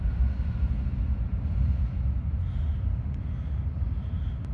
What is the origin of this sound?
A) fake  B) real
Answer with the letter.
B